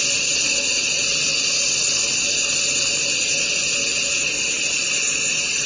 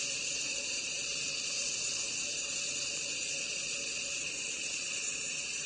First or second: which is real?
first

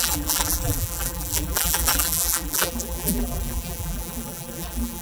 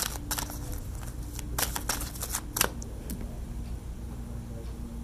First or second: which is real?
second